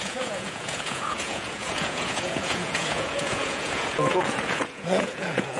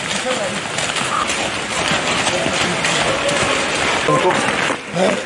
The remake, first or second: first